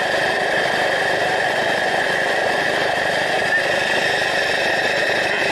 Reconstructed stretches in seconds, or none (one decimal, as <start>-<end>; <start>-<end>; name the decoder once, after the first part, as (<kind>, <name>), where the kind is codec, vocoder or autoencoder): 1.3-2.7 (vocoder, Vocos)